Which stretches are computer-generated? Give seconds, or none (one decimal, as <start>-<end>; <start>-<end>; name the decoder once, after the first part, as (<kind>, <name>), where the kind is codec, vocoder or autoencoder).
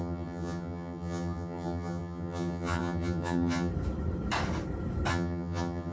0.0-3.7 (vocoder, HiFi-GAN); 5.1-5.9